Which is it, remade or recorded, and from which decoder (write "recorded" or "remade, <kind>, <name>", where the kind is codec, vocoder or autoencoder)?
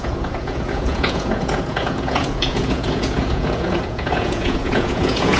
remade, vocoder, Vocos